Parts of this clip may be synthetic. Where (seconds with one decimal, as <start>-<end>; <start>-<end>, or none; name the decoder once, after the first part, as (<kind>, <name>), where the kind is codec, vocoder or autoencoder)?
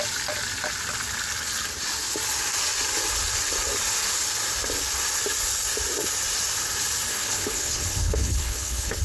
7.1-9.0 (codec, HILCodec)